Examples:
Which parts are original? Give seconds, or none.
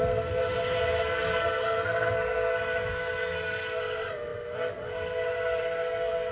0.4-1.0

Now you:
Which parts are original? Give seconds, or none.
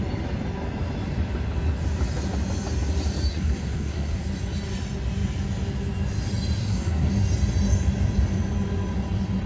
0.0-3.3; 4.2-6.6; 7.1-9.5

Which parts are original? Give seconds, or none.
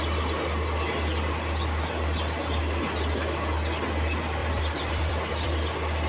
0.0-4.4; 5.5-6.1